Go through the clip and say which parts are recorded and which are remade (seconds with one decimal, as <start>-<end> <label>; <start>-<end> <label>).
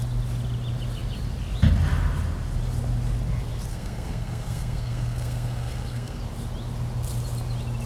0.0-3.7 recorded; 3.7-6.2 remade; 6.2-7.9 recorded